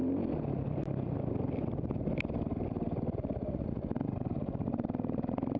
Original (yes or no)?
yes